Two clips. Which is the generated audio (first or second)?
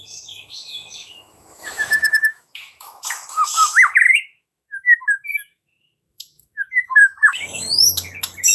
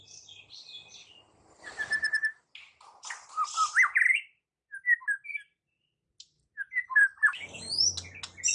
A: first